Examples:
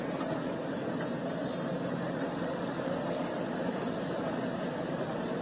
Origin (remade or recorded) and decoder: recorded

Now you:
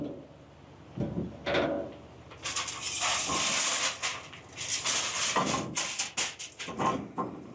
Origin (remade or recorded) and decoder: recorded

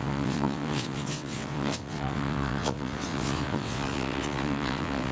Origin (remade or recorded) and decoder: remade, vocoder, WaveNeXt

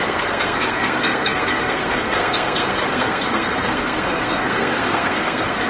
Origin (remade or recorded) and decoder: remade, codec, SNAC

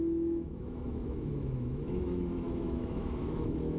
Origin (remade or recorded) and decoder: remade, autoencoder, DAC-VAE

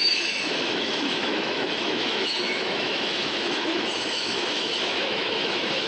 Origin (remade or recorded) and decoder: remade, autoencoder, DAC-VAE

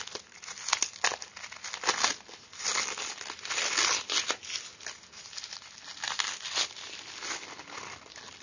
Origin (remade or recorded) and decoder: recorded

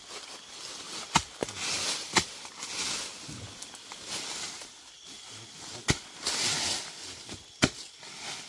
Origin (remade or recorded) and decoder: recorded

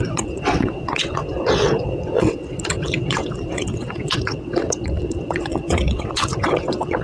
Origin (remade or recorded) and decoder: remade, vocoder, WaveNeXt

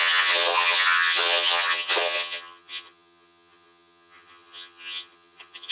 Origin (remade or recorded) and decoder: remade, vocoder, HiFi-GAN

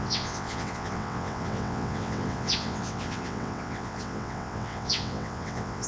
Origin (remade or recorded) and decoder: remade, vocoder, WaveNeXt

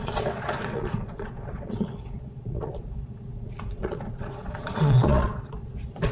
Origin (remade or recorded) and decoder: remade, vocoder, Vocos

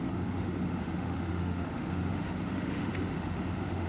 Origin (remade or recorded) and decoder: remade, autoencoder, DAC-VAE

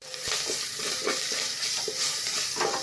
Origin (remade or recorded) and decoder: remade, vocoder, BigVGAN v2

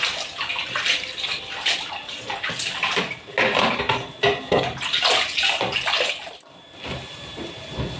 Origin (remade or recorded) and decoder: recorded